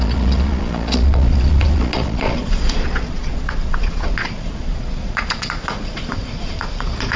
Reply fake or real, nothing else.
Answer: fake